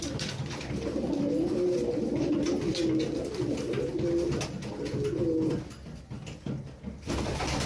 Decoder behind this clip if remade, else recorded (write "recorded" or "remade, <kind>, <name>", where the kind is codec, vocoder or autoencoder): recorded